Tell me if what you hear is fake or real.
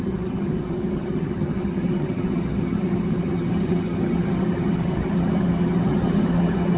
fake